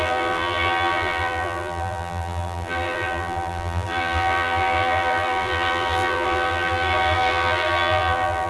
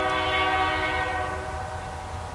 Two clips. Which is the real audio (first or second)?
second